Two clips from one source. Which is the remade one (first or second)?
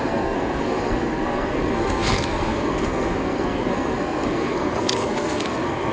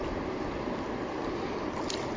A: first